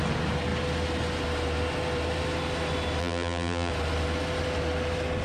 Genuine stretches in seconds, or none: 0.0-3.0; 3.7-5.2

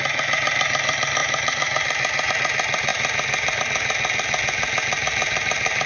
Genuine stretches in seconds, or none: 0.0-1.2; 2.3-2.9; 3.6-5.9

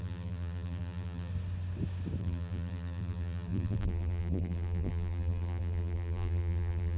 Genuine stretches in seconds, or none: 1.3-2.2

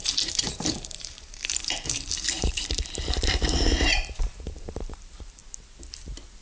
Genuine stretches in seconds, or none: 5.4-6.4

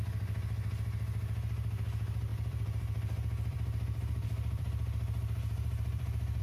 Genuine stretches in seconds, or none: 0.0-2.3

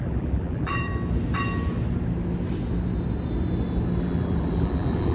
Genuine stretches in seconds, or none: 0.9-4.0